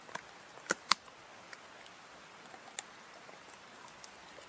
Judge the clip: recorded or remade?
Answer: recorded